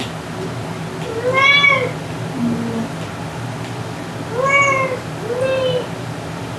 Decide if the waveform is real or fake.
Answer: real